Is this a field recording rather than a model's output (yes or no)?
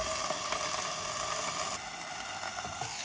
yes